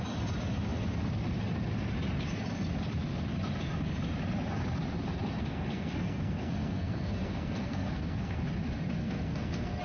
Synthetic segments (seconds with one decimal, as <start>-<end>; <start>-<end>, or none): 5.4-8.4; 9.0-9.8

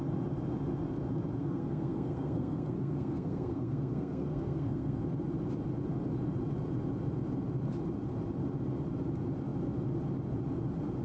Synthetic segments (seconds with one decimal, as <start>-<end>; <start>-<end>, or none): 1.4-5.0

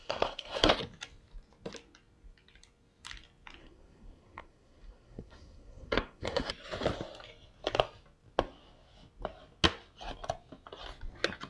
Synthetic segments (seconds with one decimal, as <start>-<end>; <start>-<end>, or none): 0.0-0.7; 3.6-6.5

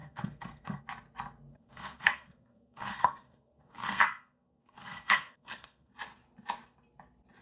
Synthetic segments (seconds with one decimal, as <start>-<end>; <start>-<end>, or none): 0.0-0.8; 1.5-5.9

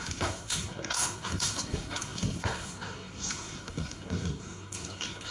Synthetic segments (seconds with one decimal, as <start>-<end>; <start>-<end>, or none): 0.0-5.3